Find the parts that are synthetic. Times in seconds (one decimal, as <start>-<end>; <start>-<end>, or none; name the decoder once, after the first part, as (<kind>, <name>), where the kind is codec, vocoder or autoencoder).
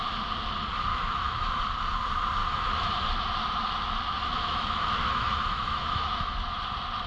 0.9-1.6 (autoencoder, DAC-VAE); 2.4-2.9; 4.2-6.6